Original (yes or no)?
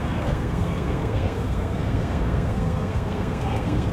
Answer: no